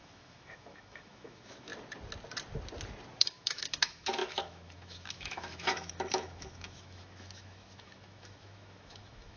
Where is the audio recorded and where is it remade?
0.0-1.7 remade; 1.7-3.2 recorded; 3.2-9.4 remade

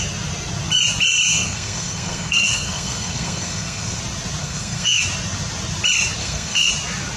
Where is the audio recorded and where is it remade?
0.0-1.3 recorded; 1.3-4.0 remade; 4.0-4.4 recorded; 4.4-5.0 remade; 5.0-6.2 recorded; 6.2-6.7 remade; 6.7-7.2 recorded

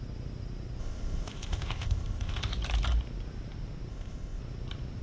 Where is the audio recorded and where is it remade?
0.0-0.8 recorded; 0.8-2.5 remade; 2.5-3.9 recorded; 3.9-4.4 remade; 4.4-5.0 recorded

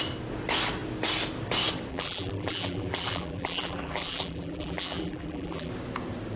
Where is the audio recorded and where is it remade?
0.0-1.9 recorded; 1.9-5.7 remade; 5.7-6.4 recorded

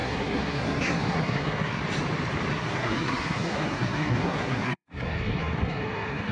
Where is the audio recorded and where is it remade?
0.0-1.8 remade; 1.8-2.5 recorded; 2.5-6.3 remade